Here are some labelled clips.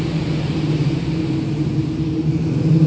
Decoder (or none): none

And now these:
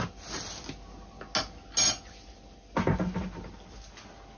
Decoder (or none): none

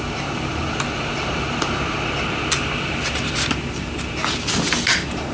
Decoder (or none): none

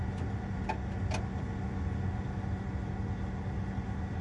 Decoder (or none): none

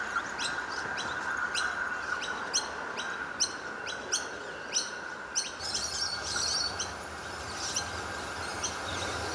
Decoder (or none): none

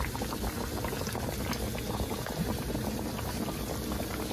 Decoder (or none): none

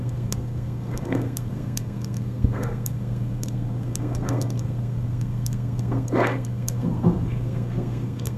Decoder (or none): codec, SNAC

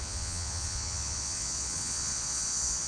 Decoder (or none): vocoder, Vocos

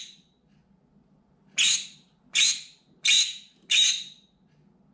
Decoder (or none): none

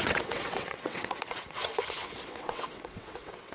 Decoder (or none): vocoder, WaveNeXt